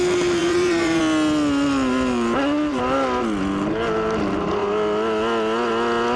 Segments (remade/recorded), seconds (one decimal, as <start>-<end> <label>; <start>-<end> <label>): 0.0-0.4 recorded; 0.4-1.0 remade; 1.0-6.2 recorded